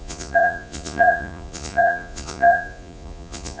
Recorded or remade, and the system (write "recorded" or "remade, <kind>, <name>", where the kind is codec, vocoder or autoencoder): remade, vocoder, Vocos